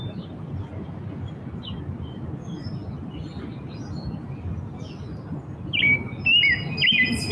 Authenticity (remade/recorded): recorded